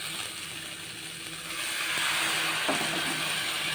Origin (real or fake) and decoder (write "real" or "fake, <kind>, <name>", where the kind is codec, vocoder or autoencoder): real